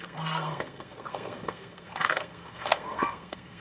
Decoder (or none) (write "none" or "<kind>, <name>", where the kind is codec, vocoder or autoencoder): codec, SNAC